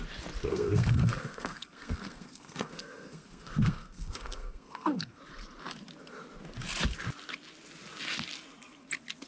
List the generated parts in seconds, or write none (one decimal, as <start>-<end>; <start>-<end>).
0.5-5.2

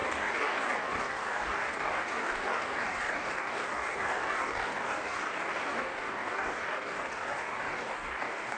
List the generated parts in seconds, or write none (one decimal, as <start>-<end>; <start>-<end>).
0.0-8.6

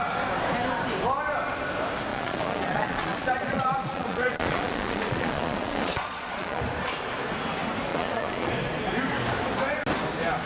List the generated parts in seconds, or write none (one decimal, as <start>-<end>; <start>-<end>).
2.1-6.6; 7.9-8.5

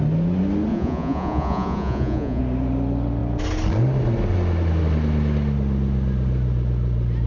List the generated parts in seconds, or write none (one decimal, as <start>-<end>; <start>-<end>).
0.7-2.4

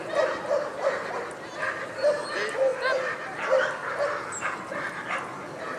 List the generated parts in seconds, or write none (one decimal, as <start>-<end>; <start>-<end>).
none